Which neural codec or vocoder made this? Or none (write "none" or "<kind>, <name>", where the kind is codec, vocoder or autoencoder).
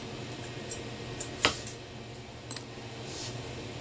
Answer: none